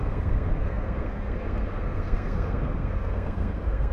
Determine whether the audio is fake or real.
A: fake